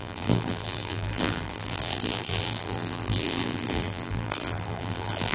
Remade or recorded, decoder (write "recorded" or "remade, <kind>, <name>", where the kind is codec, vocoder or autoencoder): remade, vocoder, BigVGAN v2